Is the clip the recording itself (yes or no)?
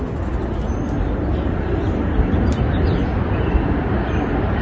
yes